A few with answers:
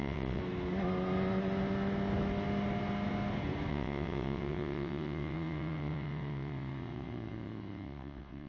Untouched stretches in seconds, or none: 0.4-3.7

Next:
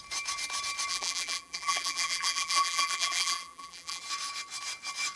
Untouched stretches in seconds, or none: 0.0-0.9; 4.0-5.2

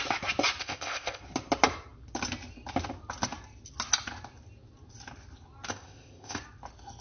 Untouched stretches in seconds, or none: 0.0-0.6; 1.2-5.7; 6.4-7.0

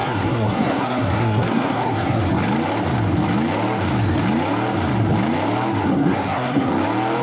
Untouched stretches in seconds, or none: 2.2-5.8; 6.7-7.2